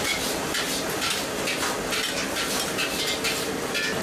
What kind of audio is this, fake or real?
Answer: real